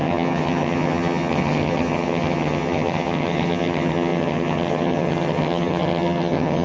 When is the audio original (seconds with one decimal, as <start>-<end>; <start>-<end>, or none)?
none